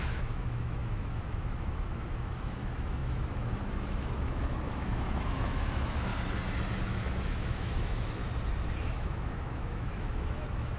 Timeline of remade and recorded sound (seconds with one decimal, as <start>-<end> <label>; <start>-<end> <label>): 0.0-6.1 remade; 6.1-6.8 recorded; 6.8-8.2 remade; 8.2-8.9 recorded; 8.9-10.8 remade